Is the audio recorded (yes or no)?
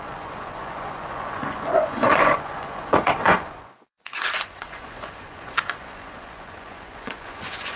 no